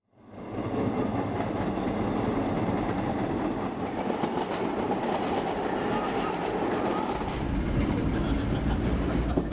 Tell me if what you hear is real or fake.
real